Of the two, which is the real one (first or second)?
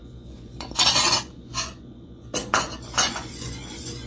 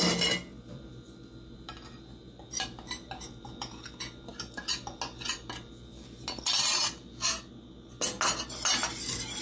second